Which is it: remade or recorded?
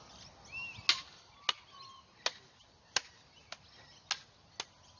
recorded